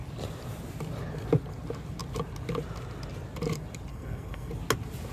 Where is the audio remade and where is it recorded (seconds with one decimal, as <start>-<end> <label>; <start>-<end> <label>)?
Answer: 0.0-3.9 recorded; 3.9-4.5 remade; 4.5-5.1 recorded